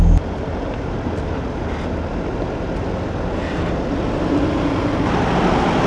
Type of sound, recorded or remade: recorded